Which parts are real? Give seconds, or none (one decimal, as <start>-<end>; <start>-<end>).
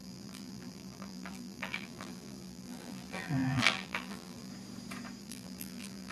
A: 4.5-5.2